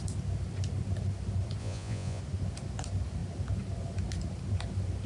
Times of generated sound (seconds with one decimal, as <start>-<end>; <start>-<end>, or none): 1.6-2.2